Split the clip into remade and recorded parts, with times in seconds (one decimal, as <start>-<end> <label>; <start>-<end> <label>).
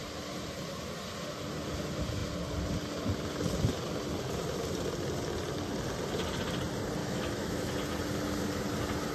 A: 0.0-7.0 recorded; 7.0-7.7 remade; 7.7-9.1 recorded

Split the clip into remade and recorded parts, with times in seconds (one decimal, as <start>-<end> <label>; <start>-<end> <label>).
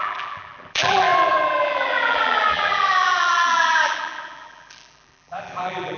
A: 0.0-6.0 remade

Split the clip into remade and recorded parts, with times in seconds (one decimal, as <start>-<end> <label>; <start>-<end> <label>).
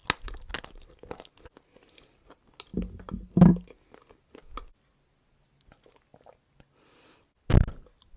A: 0.0-8.2 recorded